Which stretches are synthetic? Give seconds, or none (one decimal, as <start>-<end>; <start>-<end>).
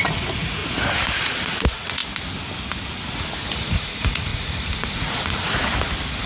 0.0-0.6; 1.2-2.0; 3.5-5.6